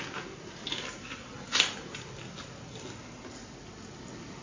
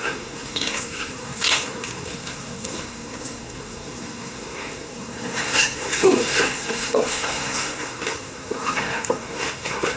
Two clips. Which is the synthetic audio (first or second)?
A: second